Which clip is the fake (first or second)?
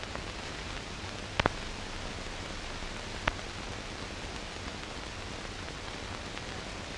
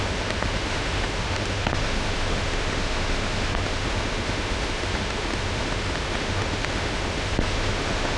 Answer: second